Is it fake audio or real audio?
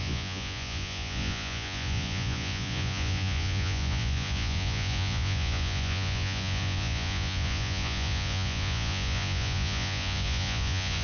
fake